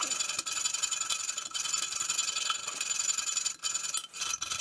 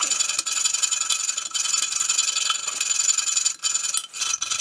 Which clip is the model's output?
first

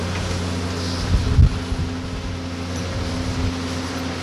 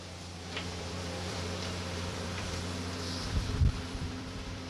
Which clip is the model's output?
second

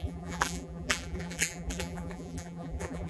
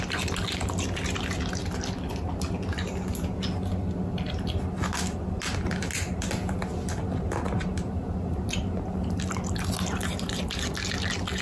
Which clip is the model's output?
first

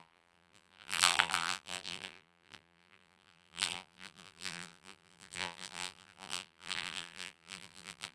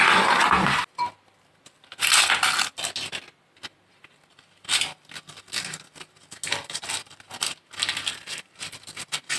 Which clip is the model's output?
first